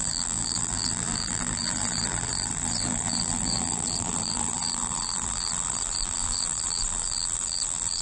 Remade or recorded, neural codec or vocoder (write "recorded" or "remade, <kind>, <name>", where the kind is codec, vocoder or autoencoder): remade, vocoder, BigVGAN v2